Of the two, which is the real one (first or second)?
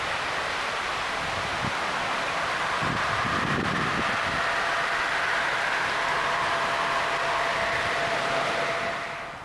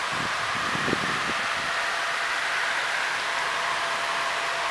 first